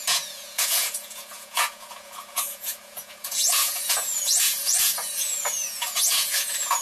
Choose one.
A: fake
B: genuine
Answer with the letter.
A